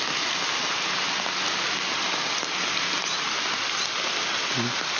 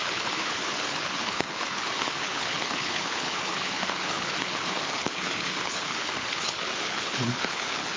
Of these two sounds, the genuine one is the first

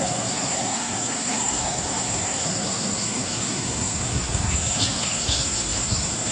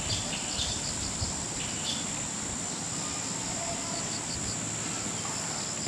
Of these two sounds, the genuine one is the second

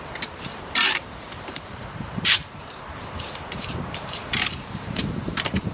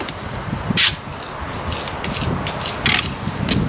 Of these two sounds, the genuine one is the second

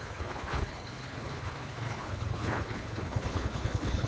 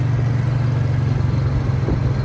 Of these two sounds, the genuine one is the second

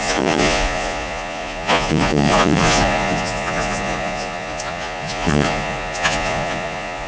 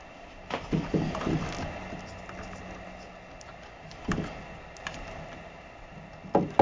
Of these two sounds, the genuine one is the second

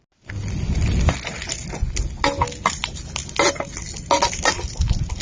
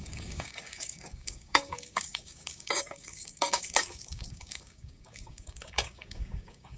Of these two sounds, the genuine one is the first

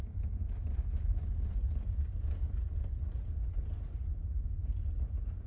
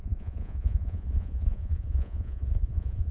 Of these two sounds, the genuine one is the first